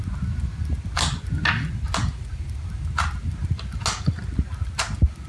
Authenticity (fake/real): real